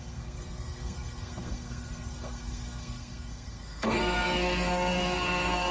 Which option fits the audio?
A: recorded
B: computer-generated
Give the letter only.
B